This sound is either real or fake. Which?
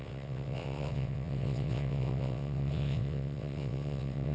fake